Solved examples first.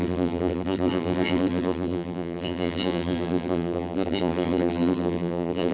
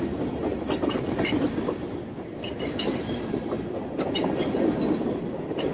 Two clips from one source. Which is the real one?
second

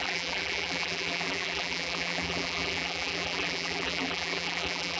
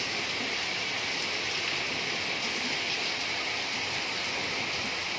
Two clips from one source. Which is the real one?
second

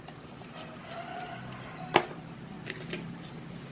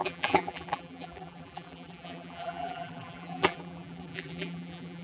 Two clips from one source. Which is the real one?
first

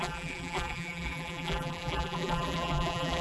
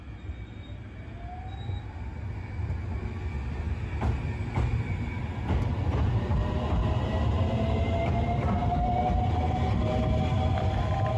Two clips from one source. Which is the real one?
second